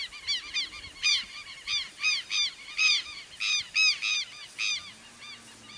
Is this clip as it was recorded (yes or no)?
yes